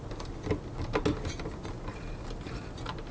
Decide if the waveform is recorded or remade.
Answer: recorded